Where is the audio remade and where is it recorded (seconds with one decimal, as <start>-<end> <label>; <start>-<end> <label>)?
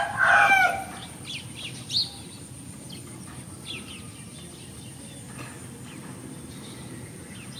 0.0-7.6 recorded